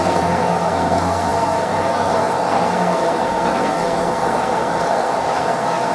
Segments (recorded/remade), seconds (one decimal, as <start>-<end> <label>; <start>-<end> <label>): 0.0-5.9 remade